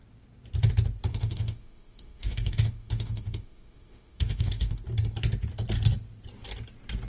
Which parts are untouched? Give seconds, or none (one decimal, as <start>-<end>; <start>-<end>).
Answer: 0.0-1.1; 4.8-7.1